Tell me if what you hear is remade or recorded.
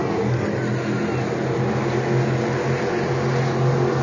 recorded